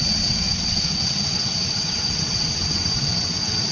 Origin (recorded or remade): remade